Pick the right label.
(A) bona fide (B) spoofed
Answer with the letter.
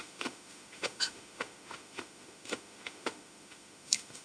B